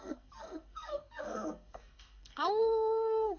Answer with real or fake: fake